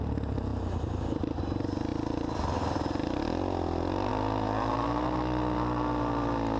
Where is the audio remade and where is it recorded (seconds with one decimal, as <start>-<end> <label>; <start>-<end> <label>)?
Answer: 0.0-0.5 recorded; 0.5-1.4 remade; 1.4-6.6 recorded